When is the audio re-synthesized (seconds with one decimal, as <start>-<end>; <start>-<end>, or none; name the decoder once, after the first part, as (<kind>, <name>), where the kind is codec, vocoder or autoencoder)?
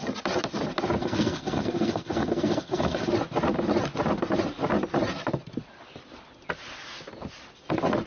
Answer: 1.0-3.1 (codec, SNAC)